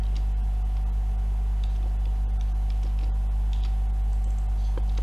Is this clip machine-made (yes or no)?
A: no